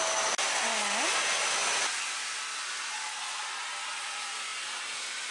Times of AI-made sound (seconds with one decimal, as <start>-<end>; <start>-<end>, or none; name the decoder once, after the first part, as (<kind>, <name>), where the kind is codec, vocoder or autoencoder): none